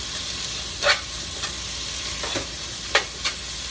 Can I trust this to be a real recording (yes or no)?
yes